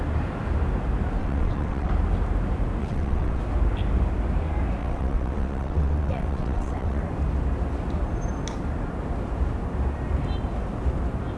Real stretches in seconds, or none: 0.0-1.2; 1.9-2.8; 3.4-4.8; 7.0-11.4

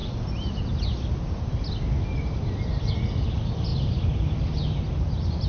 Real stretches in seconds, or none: 0.0-5.5

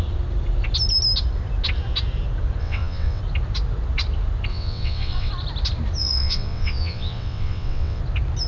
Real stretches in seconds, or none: 0.0-2.6; 3.2-4.5; 5.3-6.0; 8.0-8.5

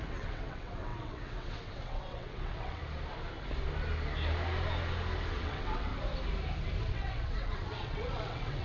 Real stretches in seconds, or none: 2.8-5.3; 5.9-6.8

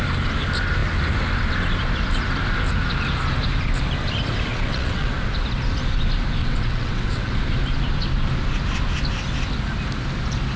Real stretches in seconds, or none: 0.0-4.5; 5.1-6.4; 7.3-10.6

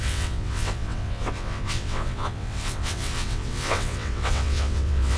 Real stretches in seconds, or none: none